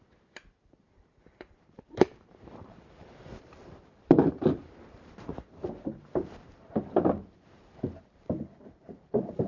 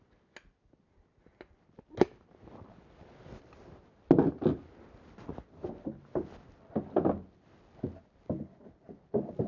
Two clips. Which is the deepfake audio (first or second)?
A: first